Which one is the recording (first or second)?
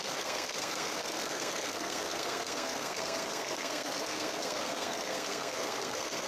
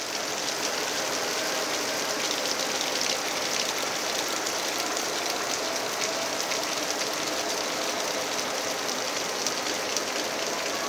second